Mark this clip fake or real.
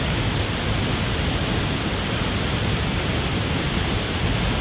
real